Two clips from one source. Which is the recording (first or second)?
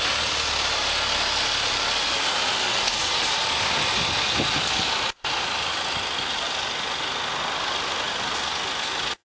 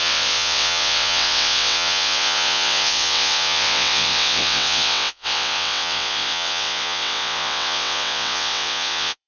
first